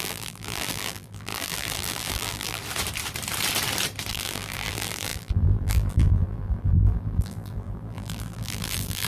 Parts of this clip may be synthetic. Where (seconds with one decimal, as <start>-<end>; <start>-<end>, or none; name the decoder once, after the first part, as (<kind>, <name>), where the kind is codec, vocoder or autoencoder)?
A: 0.0-2.6 (vocoder, BigVGAN v2); 4.1-9.1

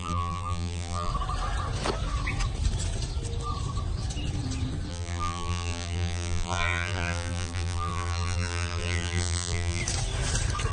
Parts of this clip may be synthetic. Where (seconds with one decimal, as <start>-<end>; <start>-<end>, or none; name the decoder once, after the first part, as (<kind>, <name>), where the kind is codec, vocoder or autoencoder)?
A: 0.0-1.1 (vocoder, BigVGAN v2); 4.9-9.8

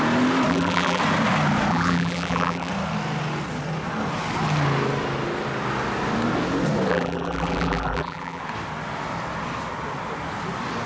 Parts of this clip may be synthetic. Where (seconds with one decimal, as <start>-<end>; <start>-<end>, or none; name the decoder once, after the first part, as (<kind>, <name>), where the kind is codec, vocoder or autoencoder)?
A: 0.5-1.0 (vocoder, BigVGAN v2); 1.7-2.7; 6.9-8.4

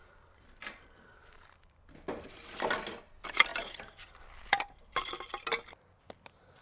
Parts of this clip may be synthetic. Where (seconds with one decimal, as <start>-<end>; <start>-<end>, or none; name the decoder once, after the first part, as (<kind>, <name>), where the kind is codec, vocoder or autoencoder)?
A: 0.0-1.9 (vocoder, BigVGAN v2); 3.5-4.9

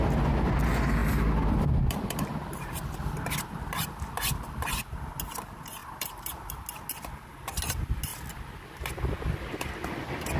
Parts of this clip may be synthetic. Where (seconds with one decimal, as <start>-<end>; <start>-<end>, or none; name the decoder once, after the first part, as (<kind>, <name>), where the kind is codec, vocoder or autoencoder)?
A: 1.0-4.7 (vocoder, BigVGAN v2); 5.8-6.5

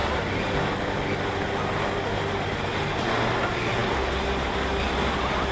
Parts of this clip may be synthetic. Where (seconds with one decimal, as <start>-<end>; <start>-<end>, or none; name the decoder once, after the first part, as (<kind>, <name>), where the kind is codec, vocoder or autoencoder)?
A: none